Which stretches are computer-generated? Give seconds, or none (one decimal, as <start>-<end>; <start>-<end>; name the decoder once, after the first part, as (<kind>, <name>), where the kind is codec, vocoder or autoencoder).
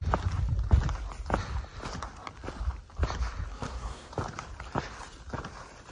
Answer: 3.5-4.1 (codec, SNAC)